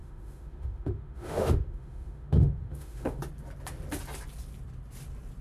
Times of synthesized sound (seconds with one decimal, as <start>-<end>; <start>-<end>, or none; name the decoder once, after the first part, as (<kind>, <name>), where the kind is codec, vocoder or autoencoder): 0.0-3.2 (autoencoder, DAC-VAE)